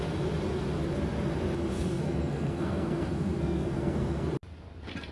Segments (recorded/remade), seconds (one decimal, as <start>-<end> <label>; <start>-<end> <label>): 0.0-1.7 recorded; 1.7-4.3 remade; 4.3-5.1 recorded